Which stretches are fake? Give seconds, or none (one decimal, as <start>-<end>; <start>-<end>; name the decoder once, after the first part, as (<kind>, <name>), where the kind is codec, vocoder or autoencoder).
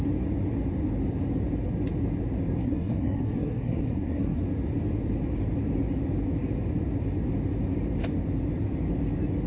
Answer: 2.6-4.4 (codec, SNAC)